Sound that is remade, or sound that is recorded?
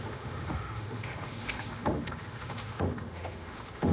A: remade